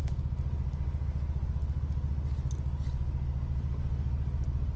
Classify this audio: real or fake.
real